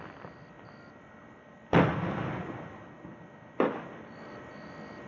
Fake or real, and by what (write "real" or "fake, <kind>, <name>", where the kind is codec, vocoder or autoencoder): fake, vocoder, BigVGAN v2